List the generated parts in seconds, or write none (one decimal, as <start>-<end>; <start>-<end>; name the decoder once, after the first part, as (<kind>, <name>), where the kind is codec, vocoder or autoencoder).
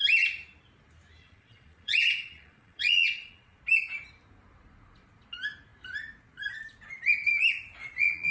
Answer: 1.2-3.6 (vocoder, Vocos); 7.8-8.3